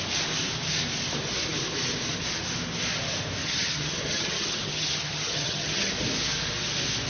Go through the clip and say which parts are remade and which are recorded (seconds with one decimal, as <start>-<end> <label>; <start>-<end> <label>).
0.0-3.4 recorded; 3.4-5.9 remade; 5.9-7.1 recorded